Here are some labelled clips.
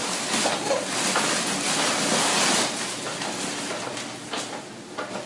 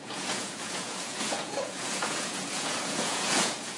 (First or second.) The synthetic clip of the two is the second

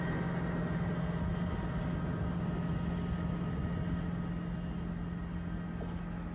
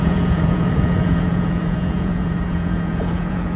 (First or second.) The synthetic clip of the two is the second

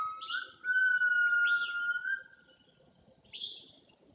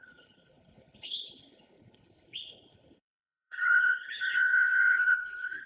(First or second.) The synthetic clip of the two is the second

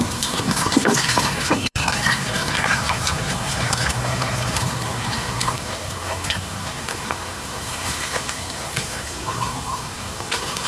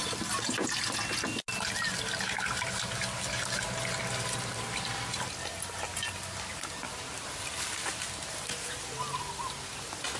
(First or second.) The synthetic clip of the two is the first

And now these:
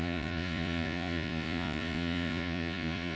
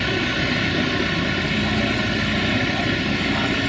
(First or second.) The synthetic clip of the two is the first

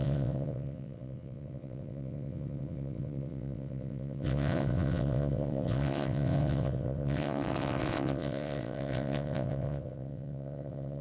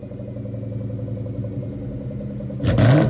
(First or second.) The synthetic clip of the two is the first